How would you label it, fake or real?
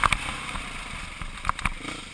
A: real